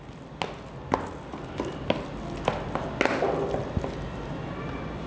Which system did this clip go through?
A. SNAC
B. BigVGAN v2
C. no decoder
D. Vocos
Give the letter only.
C